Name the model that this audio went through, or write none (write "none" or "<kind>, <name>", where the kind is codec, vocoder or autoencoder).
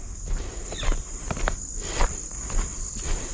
none